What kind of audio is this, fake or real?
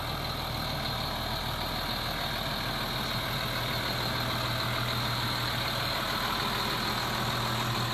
real